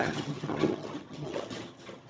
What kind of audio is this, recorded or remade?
remade